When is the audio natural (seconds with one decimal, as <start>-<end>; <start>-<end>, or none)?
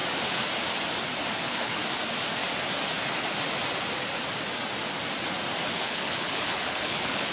0.0-1.4; 1.8-5.7